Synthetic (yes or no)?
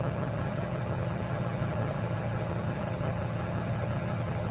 yes